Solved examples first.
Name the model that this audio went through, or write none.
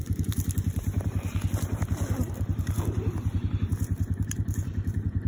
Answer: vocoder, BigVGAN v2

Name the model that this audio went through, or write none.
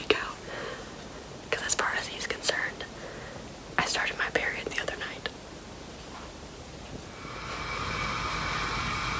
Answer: none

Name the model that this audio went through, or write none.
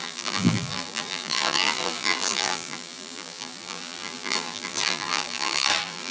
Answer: vocoder, BigVGAN v2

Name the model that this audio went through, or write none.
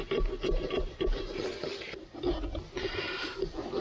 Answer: none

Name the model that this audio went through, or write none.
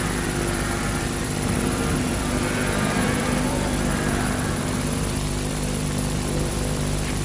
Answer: vocoder, BigVGAN v2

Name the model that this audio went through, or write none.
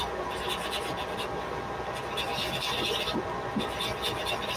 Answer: none